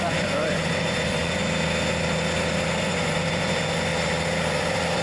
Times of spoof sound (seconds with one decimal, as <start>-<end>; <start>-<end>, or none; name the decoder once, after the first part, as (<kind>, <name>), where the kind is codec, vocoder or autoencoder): 0.0-1.4 (vocoder, Vocos); 2.8-3.9; 4.5-5.0